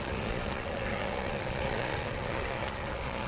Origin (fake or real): fake